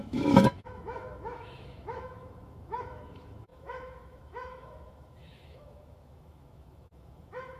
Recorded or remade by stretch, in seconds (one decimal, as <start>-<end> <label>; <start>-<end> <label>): 0.0-7.6 remade